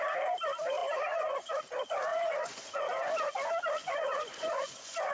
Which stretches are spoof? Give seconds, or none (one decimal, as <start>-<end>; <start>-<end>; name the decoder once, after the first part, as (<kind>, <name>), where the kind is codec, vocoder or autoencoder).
0.8-1.5 (vocoder, Vocos); 2.1-3.1; 3.8-5.1

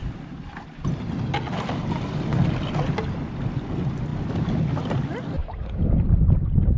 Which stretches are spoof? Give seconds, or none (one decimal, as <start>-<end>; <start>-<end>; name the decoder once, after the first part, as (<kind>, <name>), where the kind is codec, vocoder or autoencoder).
none

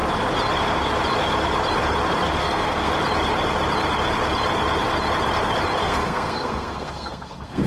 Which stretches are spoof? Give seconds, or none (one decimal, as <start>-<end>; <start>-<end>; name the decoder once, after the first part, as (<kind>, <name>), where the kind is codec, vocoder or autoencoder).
2.4-2.9 (codec, SNAC); 5.8-7.7

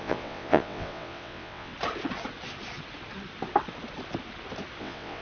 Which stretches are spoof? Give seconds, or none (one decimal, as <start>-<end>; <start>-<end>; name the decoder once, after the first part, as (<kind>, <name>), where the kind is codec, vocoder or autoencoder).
0.0-1.7 (vocoder, WaveNeXt); 4.8-5.2

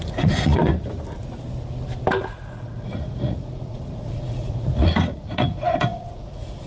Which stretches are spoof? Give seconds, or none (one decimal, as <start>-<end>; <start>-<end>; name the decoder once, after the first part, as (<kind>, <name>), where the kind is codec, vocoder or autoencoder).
0.0-0.7 (vocoder, Vocos); 2.1-6.7

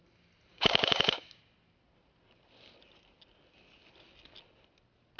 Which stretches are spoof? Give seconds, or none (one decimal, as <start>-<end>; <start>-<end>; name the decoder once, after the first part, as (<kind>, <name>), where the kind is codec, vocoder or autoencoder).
0.5-1.4 (codec, DAC)

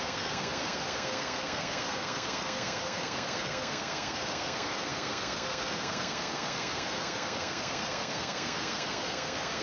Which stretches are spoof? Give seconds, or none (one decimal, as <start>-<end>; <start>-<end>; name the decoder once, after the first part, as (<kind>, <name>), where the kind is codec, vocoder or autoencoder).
0.0-9.6 (codec, SNAC)

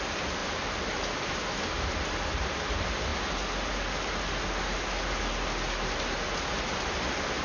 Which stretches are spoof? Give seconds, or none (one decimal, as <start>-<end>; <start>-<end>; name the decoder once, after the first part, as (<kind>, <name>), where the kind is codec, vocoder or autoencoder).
0.4-1.3 (vocoder, BigVGAN v2)